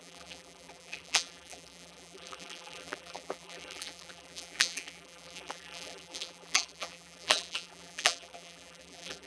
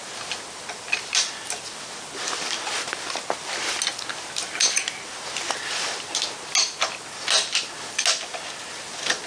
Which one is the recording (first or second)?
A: second